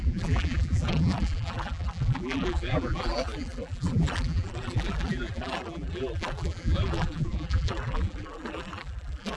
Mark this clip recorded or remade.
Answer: remade